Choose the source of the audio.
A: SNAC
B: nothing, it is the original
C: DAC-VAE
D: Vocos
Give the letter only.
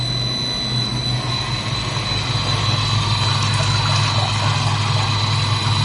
B